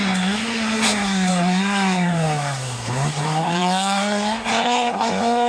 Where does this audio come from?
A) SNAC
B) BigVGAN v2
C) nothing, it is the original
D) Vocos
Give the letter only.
A